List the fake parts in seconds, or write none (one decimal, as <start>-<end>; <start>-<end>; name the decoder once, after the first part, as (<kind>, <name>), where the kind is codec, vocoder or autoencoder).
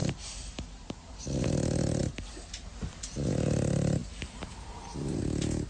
0.0-1.2 (vocoder, BigVGAN v2); 4.0-5.2